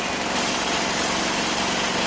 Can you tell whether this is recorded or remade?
recorded